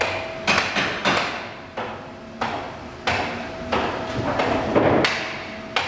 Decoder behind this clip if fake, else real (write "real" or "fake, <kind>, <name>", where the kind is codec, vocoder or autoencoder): real